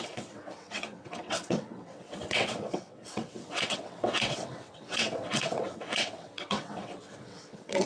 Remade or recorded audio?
remade